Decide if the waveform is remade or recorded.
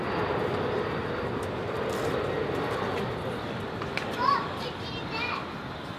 remade